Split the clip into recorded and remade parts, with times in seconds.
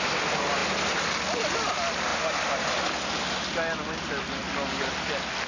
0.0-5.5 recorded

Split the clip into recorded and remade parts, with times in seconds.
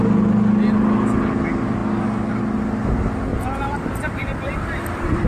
0.0-3.3 recorded; 3.3-5.3 remade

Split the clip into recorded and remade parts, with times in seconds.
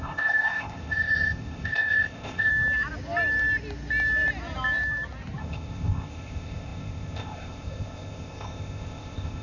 0.0-2.5 remade; 2.5-5.4 recorded; 5.4-9.4 remade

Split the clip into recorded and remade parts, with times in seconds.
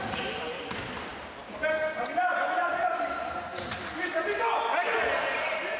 0.0-5.8 recorded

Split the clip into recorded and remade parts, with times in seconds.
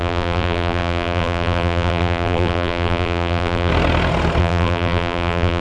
0.0-3.7 remade; 3.7-4.4 recorded; 4.4-5.6 remade